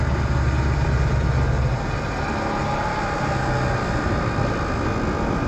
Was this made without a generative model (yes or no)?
yes